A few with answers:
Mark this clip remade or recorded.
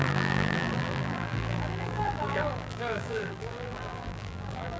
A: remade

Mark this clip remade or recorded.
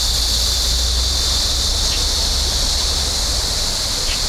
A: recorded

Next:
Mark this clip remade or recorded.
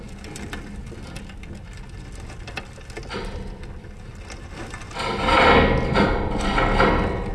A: recorded